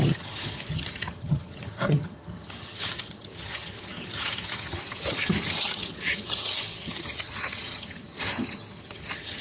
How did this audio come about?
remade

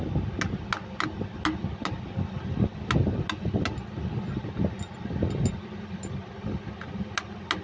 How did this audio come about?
recorded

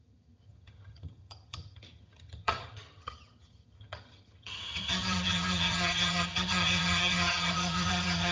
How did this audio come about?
remade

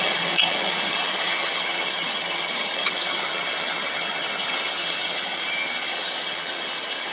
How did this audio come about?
remade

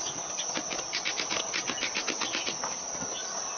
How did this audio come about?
recorded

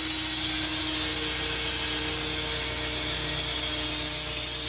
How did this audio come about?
recorded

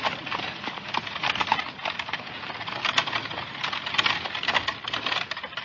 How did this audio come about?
recorded